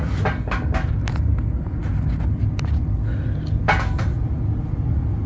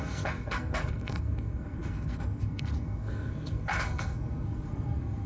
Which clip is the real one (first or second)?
first